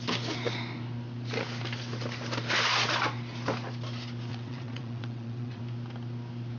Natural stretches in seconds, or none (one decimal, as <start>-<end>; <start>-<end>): 0.0-4.3; 5.6-6.6